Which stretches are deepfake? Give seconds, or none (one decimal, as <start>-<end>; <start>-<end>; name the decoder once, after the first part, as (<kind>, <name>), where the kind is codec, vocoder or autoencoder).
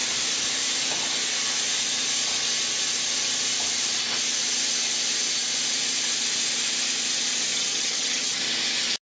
7.5-8.4 (vocoder, HiFi-GAN)